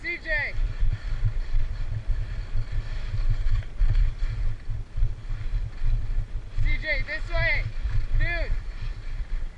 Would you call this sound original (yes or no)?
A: yes